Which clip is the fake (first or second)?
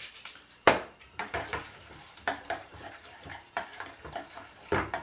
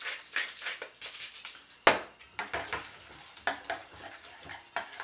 first